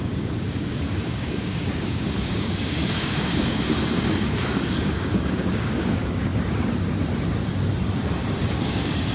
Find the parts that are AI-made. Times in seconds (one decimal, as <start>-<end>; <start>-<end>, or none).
0.0-6.3; 8.5-9.1